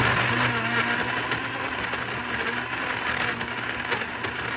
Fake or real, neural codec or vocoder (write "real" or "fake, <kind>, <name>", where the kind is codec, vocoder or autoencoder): real